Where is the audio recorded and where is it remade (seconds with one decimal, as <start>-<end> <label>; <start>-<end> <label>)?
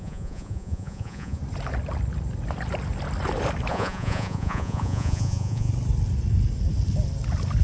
0.0-1.4 remade; 1.4-3.7 recorded; 3.7-5.7 remade; 5.7-7.6 recorded